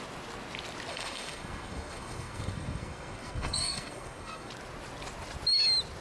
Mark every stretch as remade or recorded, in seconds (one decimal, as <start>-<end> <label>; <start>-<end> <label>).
0.0-0.9 recorded; 0.9-4.5 remade; 4.5-6.0 recorded